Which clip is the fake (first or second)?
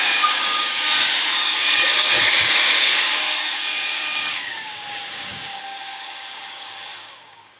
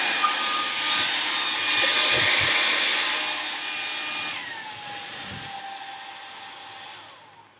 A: first